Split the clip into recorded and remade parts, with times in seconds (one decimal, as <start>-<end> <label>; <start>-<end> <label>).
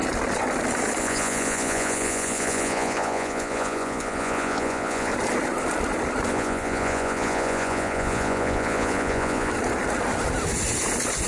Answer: 0.0-1.0 recorded; 1.0-5.1 remade; 5.1-6.3 recorded; 6.3-9.5 remade; 9.5-11.3 recorded